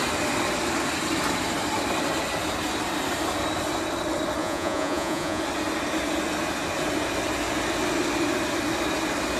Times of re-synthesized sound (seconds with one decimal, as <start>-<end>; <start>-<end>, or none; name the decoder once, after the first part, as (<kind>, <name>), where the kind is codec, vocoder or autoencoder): 4.4-5.4 (vocoder, Vocos)